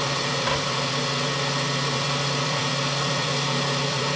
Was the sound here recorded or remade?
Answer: remade